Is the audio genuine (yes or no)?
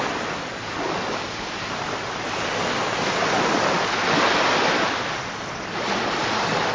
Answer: yes